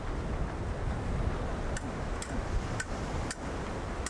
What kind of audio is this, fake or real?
real